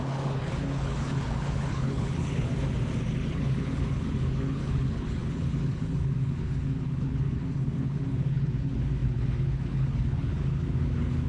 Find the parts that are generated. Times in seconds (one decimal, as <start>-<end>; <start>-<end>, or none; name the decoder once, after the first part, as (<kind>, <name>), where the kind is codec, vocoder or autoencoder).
0.0-2.5 (codec, HILCodec); 3.3-11.3